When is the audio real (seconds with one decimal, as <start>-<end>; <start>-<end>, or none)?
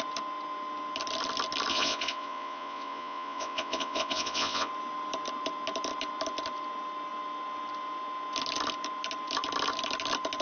0.0-1.7; 4.7-10.4